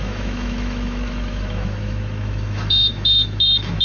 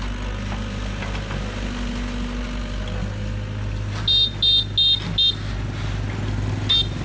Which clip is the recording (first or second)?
second